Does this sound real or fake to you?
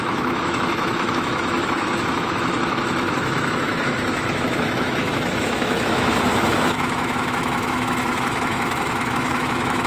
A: fake